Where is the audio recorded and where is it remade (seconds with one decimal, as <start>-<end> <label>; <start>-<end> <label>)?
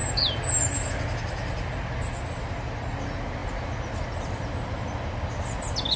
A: 0.0-6.0 recorded